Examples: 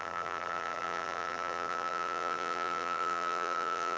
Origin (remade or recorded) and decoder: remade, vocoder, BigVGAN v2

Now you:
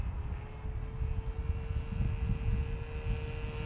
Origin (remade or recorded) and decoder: recorded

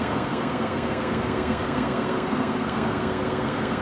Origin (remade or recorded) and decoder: remade, codec, SNAC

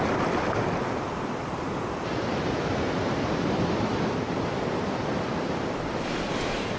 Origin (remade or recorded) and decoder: recorded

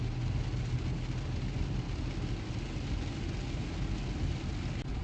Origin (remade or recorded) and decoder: recorded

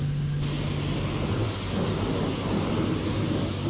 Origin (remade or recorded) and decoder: recorded